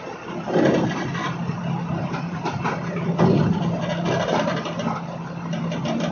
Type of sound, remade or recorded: recorded